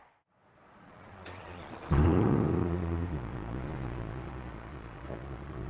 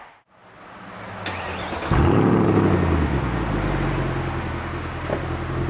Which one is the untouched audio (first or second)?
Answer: second